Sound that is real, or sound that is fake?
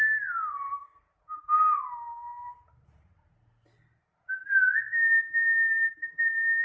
real